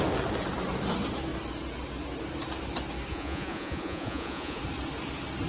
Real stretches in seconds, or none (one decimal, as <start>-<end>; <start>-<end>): 0.0-3.1; 4.6-5.5